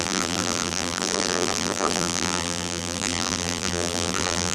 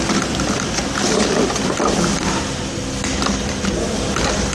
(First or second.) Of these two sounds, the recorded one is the second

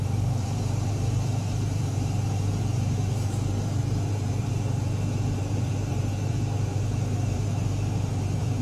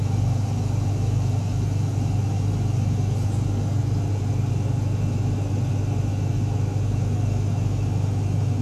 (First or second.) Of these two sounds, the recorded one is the second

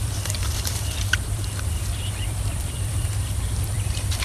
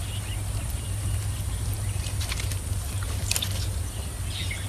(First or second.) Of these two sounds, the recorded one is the second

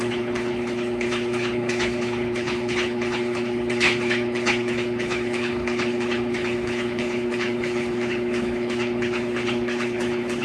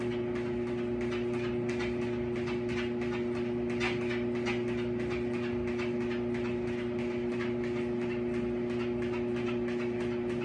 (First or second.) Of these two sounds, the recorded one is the second